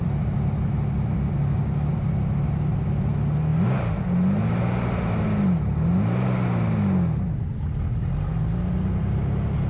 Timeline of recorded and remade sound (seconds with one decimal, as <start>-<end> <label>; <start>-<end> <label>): 0.0-9.7 recorded